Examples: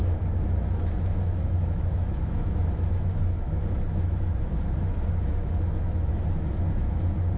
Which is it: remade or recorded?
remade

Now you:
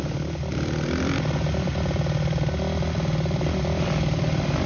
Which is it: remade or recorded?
remade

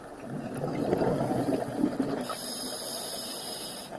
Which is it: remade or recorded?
recorded